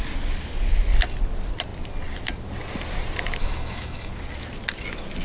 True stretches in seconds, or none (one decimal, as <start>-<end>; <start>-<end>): 0.0-3.4; 4.1-5.2